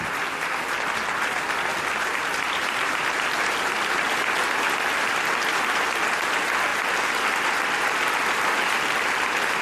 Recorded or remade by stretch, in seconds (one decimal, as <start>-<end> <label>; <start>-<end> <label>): 0.0-1.7 recorded; 1.7-3.0 remade; 3.0-9.6 recorded